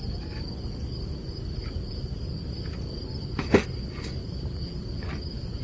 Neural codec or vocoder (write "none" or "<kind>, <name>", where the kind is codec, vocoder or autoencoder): none